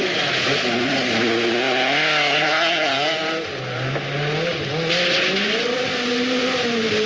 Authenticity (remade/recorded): recorded